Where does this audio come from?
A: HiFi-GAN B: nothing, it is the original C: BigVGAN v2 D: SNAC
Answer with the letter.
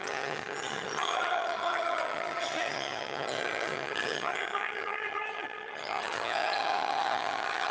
A